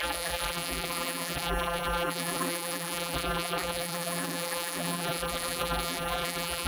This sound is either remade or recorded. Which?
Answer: remade